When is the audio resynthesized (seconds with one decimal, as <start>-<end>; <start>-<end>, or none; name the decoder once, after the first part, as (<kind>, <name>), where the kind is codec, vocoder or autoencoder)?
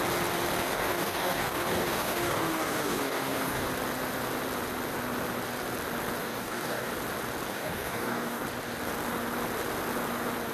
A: 0.6-3.7 (codec, DAC); 6.2-6.9; 7.5-8.4